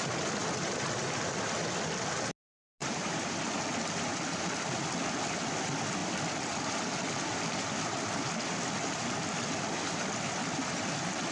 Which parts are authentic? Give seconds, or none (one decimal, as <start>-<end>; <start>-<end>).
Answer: 0.0-2.8; 3.5-11.3